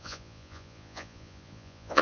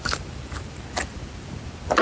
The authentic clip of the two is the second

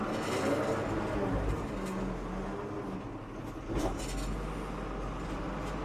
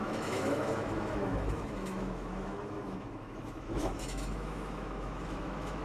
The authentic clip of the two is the first